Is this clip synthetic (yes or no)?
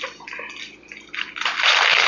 no